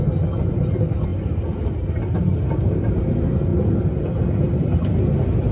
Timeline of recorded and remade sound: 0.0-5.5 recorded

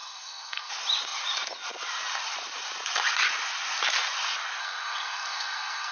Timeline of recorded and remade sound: 0.0-0.7 remade; 0.7-4.6 recorded; 4.6-5.9 remade

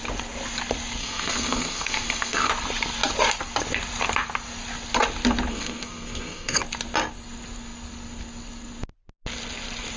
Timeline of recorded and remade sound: 0.0-1.0 recorded; 1.0-2.5 remade; 2.5-5.5 recorded; 5.5-6.6 remade; 6.6-10.0 recorded

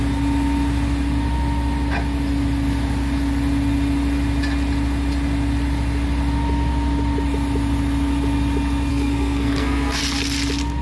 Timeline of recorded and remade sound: 0.0-8.9 recorded; 8.9-10.0 remade; 10.0-10.8 recorded

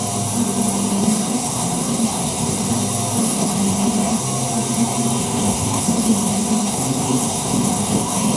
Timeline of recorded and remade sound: 0.0-0.9 recorded; 0.9-2.7 remade; 2.7-3.2 recorded; 3.2-4.2 remade; 4.2-5.2 recorded; 5.2-8.4 remade